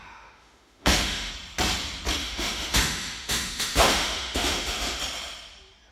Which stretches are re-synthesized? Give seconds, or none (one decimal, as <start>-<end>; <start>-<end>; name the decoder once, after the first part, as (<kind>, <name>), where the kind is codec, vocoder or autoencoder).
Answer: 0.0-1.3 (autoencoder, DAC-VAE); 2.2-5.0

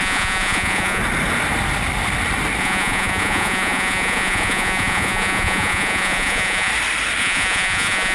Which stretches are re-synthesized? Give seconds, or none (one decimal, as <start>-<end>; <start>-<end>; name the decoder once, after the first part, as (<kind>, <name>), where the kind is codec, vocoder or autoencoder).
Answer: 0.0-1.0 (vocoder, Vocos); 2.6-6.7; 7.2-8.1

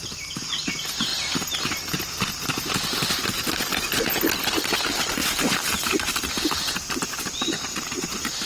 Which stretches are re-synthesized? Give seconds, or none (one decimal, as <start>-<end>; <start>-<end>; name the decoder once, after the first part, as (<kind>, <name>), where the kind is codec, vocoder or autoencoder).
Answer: 5.2-8.5 (vocoder, BigVGAN v2)